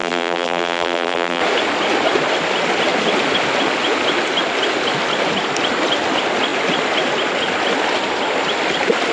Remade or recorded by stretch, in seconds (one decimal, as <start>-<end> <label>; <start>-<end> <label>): 0.0-1.4 remade; 1.4-9.1 recorded

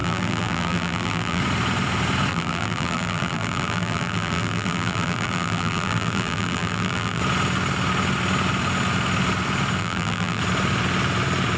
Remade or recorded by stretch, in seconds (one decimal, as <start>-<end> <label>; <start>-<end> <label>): 0.0-1.4 remade; 1.4-2.3 recorded; 2.3-7.2 remade; 7.2-9.8 recorded; 9.8-10.4 remade; 10.4-11.6 recorded

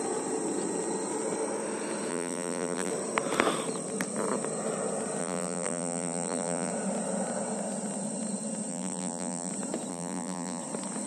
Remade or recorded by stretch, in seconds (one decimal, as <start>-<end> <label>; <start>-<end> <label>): 0.0-2.1 recorded; 2.1-2.9 remade; 2.9-5.2 recorded; 5.2-6.7 remade; 6.7-8.7 recorded; 8.7-9.5 remade; 9.5-9.9 recorded; 9.9-10.6 remade; 10.6-11.1 recorded

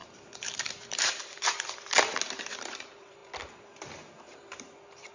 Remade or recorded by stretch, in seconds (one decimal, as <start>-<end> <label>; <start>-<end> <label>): 0.0-5.1 remade

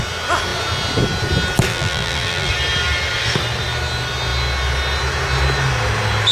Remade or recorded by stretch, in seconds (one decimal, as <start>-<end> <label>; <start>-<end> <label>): 0.0-1.7 recorded; 1.7-2.5 remade; 2.5-6.3 recorded

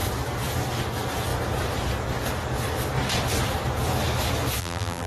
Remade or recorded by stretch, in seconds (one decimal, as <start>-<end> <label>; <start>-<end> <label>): 0.0-4.6 recorded; 4.6-5.1 remade